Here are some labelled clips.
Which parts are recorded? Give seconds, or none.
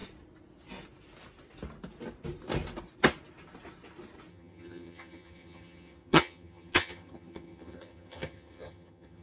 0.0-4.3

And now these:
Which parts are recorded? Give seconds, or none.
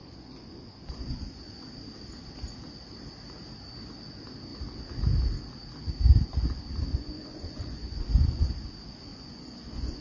1.7-6.9; 8.5-9.1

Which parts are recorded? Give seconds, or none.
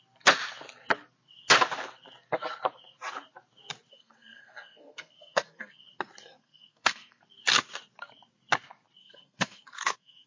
0.0-3.9; 5.8-6.4; 7.2-9.0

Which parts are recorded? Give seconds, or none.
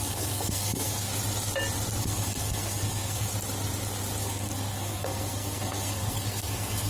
1.1-2.0; 3.3-4.2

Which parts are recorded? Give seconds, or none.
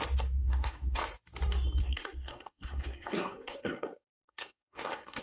0.0-0.4; 1.0-1.8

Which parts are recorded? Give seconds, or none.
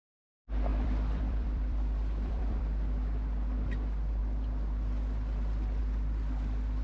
0.0-0.7; 2.6-6.8